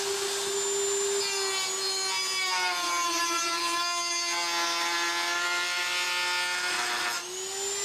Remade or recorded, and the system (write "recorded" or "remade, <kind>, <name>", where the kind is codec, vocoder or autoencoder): recorded